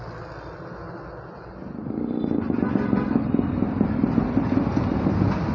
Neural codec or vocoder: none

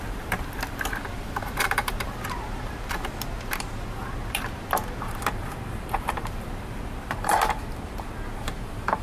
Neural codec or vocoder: vocoder, BigVGAN v2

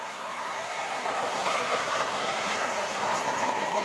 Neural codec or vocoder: codec, SNAC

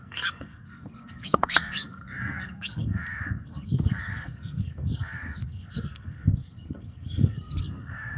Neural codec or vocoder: codec, SNAC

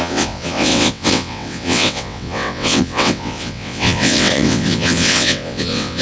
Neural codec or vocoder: vocoder, WaveNeXt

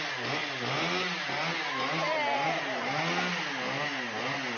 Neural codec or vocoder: none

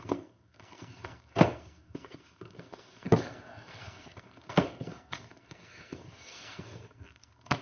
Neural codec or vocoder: codec, SNAC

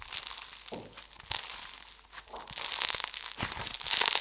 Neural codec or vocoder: none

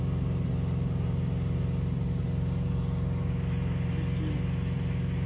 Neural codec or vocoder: none